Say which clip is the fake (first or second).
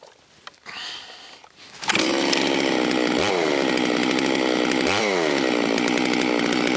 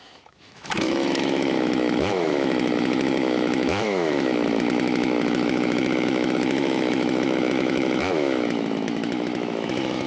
second